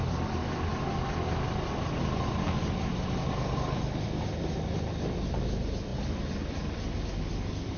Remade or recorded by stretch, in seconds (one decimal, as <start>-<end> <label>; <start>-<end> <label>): 0.0-7.8 recorded